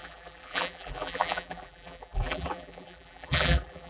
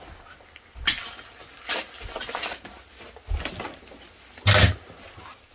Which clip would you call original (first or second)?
second